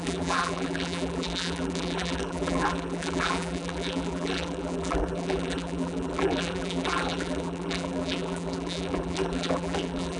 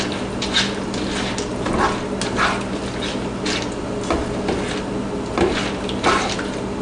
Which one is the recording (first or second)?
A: second